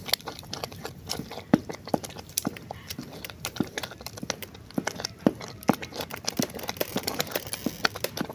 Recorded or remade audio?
recorded